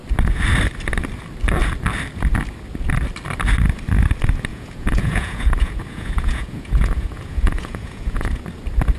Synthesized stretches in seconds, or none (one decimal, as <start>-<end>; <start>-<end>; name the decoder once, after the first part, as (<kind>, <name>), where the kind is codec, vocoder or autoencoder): 4.5-8.4 (vocoder, Vocos)